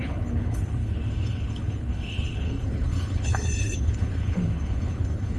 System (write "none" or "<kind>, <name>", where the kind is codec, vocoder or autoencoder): codec, HILCodec